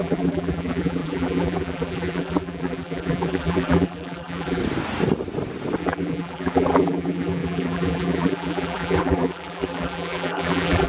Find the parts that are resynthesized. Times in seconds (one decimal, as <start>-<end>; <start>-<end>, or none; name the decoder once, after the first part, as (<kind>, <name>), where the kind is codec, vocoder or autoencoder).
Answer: 0.0-4.6 (vocoder, BigVGAN v2); 5.8-10.9